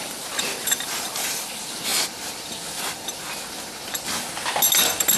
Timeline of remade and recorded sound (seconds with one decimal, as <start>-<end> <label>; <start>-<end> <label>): 0.0-0.6 recorded; 0.6-1.5 remade; 1.5-5.2 recorded